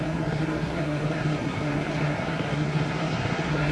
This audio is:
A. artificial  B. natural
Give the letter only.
A